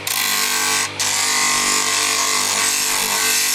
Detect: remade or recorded recorded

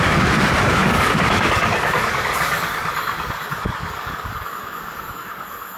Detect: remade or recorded remade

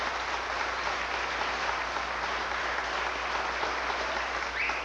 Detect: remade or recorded recorded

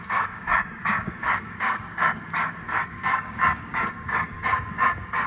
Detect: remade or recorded remade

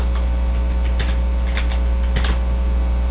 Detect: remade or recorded recorded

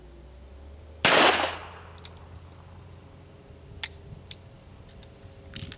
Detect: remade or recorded recorded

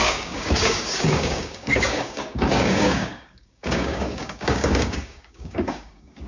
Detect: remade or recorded remade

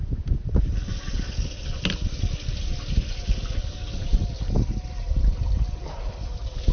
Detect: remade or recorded recorded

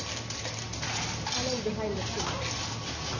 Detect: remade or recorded recorded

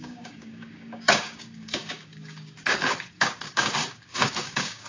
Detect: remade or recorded remade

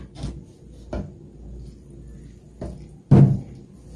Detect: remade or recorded recorded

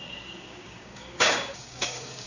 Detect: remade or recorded remade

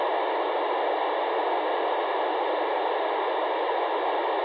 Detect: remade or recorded recorded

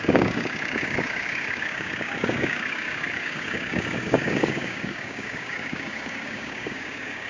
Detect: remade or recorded remade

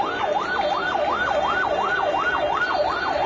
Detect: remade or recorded recorded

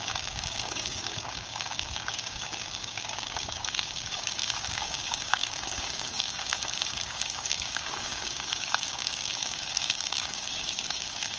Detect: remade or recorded remade